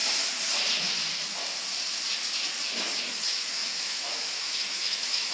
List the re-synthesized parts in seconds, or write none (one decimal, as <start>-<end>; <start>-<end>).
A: 3.2-5.3